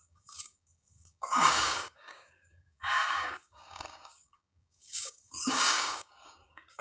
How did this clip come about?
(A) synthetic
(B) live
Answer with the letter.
A